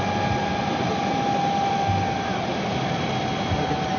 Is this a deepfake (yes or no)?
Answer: no